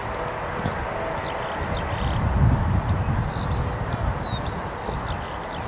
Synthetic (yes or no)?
no